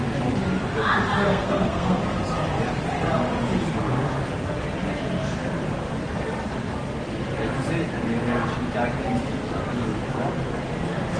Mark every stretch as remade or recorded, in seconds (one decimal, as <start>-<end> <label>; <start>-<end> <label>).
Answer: 0.0-1.3 recorded; 1.3-2.0 remade; 2.0-11.2 recorded